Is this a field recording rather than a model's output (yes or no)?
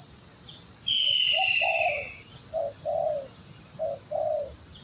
yes